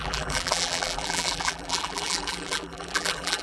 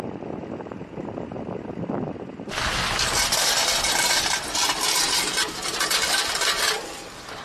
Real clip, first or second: second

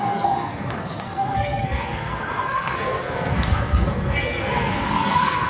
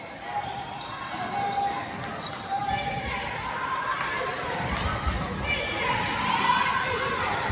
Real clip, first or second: second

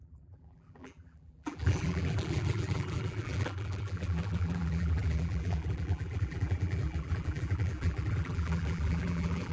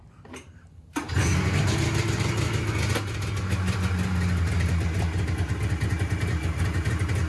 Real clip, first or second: second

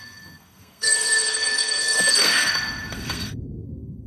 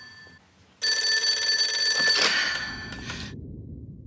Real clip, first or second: second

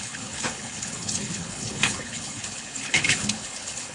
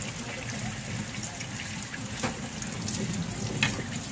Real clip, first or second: second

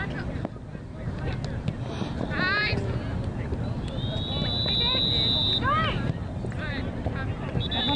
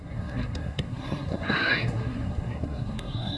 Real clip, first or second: first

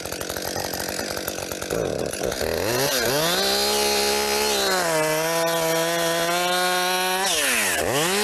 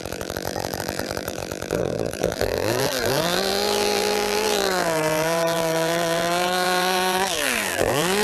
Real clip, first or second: first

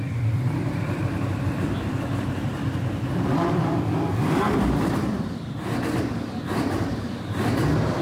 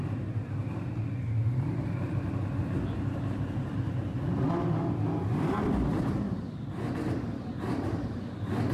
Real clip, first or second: second